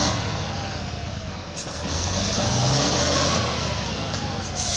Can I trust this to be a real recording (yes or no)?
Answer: no